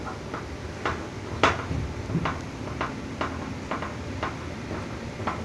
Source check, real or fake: real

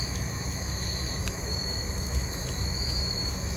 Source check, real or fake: fake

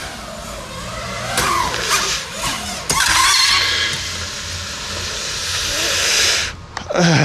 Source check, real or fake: real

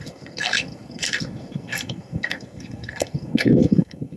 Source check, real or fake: fake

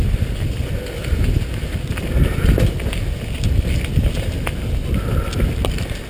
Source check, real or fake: real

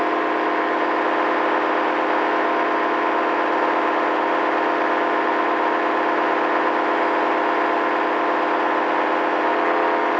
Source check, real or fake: real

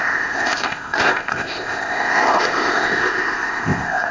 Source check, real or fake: fake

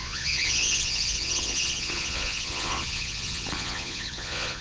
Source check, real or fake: fake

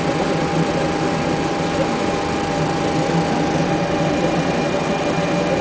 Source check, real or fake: real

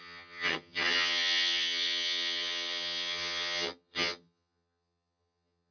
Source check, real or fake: fake